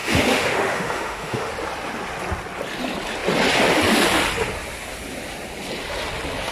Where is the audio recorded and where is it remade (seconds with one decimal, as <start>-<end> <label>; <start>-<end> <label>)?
0.0-1.5 remade; 1.5-6.5 recorded